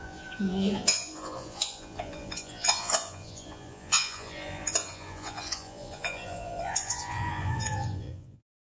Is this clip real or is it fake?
fake